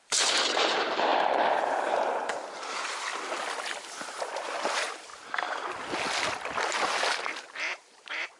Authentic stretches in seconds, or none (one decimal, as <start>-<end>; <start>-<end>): 3.1-4.1; 5.1-7.4